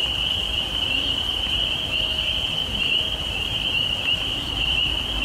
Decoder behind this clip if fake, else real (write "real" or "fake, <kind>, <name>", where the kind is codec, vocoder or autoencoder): fake, vocoder, BigVGAN v2